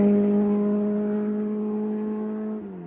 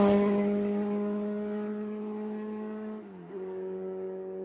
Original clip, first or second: first